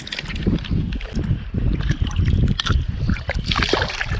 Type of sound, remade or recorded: recorded